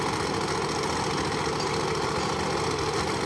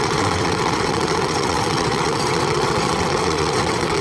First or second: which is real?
first